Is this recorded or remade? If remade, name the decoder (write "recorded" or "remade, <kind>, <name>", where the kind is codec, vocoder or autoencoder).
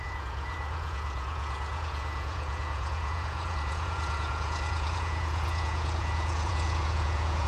remade, vocoder, Vocos